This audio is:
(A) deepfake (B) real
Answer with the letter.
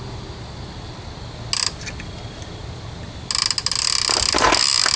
B